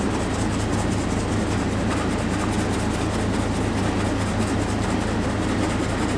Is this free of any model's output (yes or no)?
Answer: yes